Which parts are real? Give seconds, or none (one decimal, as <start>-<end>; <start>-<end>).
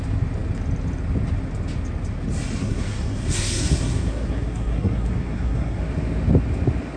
0.0-2.6; 5.8-7.0